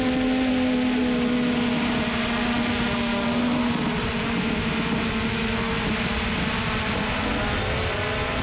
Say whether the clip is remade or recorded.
recorded